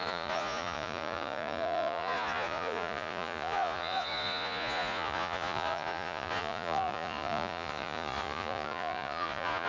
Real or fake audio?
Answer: fake